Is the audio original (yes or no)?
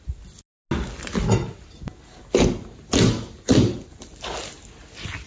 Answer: yes